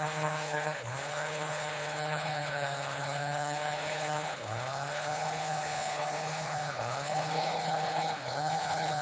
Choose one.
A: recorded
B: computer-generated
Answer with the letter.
B